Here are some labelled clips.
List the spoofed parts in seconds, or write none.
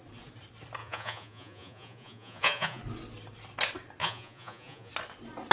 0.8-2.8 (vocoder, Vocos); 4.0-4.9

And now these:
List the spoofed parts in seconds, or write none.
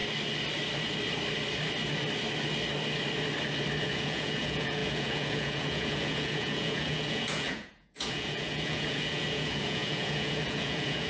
3.8-11.1 (vocoder, Vocos)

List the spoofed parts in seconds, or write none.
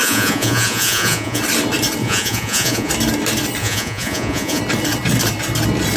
0.0-1.4 (vocoder, Vocos); 2.0-2.9; 3.6-4.6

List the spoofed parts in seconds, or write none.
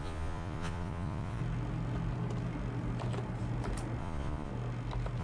0.0-1.4 (vocoder, Vocos); 4.0-4.5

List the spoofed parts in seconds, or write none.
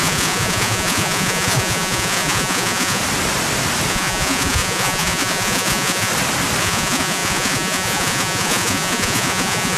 0.0-3.0 (vocoder, Vocos); 3.9-6.1; 6.6-9.8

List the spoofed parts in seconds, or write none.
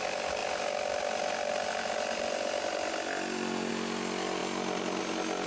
none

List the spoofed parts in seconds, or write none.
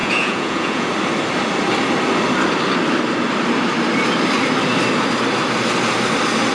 0.0-0.9 (vocoder, Vocos)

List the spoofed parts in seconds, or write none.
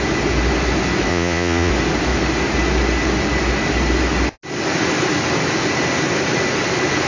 1.1-1.7 (vocoder, Vocos)